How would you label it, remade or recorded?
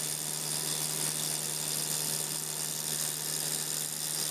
recorded